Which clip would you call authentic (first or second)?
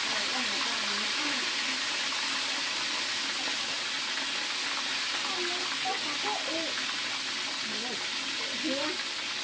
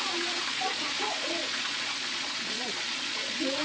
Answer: first